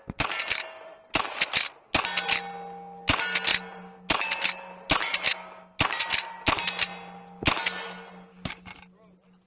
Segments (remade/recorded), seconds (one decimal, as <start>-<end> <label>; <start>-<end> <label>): 0.0-9.5 recorded